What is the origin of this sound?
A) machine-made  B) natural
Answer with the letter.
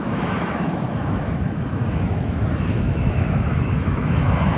A